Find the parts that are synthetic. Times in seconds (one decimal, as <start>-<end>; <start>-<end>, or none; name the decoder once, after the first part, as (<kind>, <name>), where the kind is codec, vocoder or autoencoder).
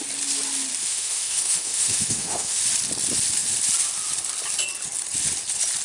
0.8-2.6 (autoencoder, DAC-VAE)